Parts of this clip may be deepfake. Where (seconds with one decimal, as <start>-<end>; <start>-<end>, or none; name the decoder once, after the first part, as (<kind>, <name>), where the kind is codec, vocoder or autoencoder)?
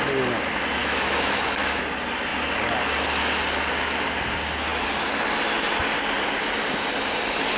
0.8-1.8 (autoencoder, DAC-VAE)